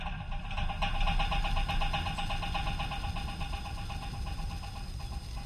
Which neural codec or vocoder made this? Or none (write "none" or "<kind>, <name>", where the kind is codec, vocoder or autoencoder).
none